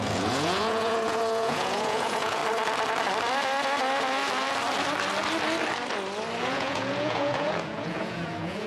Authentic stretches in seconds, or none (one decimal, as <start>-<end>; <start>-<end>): 2.4-6.4